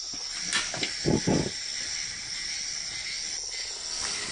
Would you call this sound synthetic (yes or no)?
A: no